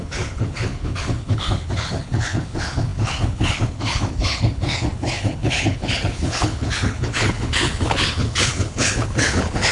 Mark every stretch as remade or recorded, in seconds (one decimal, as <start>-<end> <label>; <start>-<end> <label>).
0.0-9.7 remade